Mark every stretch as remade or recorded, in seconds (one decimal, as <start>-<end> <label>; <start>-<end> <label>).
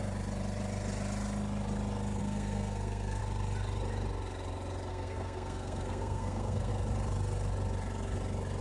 0.0-2.2 recorded; 2.2-3.2 remade; 3.2-4.9 recorded; 4.9-6.7 remade; 6.7-8.6 recorded